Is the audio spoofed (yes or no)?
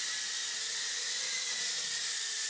no